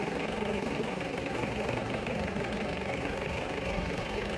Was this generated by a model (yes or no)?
yes